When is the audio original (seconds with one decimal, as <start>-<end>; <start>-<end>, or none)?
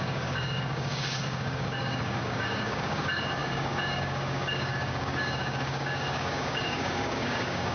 none